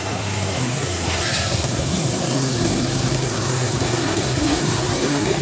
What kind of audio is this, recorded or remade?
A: remade